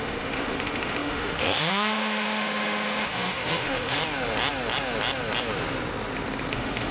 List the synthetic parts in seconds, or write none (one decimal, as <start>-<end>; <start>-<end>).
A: 0.0-4.0; 6.5-6.9